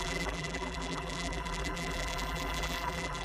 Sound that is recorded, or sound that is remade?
remade